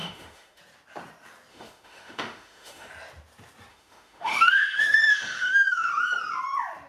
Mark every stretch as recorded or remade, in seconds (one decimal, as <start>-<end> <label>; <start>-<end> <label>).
0.0-0.6 remade; 0.6-1.5 recorded; 1.5-2.9 remade; 2.9-3.7 recorded; 3.7-5.9 remade; 5.9-6.9 recorded